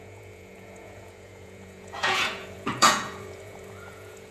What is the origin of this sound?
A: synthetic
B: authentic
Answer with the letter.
A